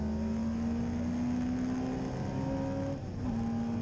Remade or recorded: recorded